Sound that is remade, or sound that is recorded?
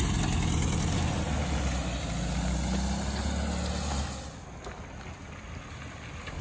recorded